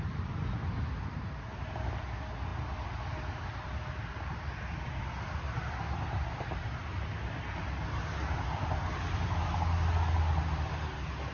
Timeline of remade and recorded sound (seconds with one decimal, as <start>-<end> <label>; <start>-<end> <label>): 0.0-11.3 recorded